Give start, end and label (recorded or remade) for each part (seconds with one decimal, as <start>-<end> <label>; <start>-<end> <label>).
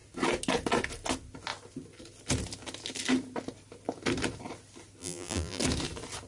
0.0-5.0 recorded; 5.0-5.6 remade; 5.6-6.3 recorded